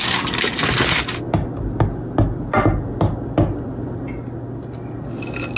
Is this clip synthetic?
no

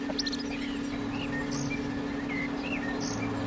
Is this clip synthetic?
no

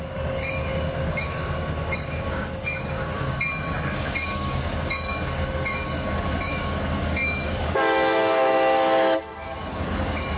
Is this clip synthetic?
yes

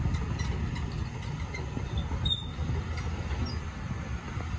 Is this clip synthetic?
no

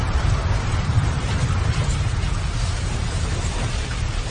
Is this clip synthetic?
yes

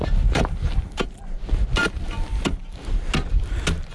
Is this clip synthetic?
no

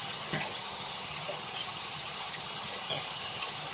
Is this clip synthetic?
yes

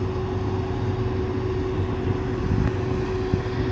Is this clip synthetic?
no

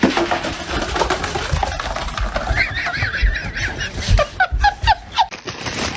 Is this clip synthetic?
no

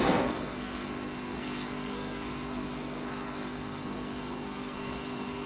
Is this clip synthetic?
yes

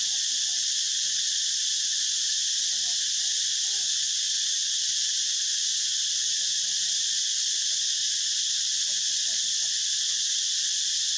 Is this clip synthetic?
no